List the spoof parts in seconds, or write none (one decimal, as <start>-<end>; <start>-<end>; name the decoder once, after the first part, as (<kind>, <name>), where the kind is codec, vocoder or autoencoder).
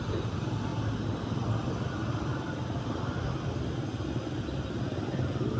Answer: none